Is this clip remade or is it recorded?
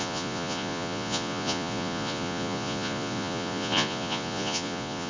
remade